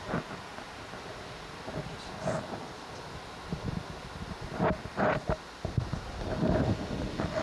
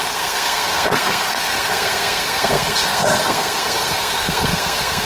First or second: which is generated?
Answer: second